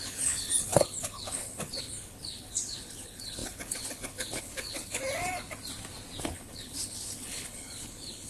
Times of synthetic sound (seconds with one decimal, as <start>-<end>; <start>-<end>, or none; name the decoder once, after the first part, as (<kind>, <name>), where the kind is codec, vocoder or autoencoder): 0.0-5.0 (codec, HILCodec); 6.2-8.3